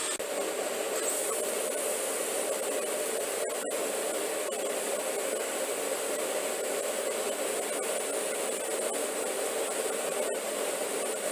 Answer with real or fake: real